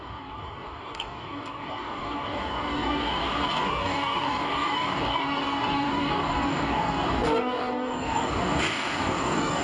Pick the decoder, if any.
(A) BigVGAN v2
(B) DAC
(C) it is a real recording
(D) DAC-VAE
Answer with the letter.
B